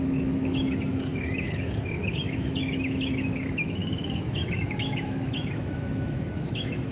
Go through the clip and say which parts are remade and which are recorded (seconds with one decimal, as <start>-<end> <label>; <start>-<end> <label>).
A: 0.0-6.9 remade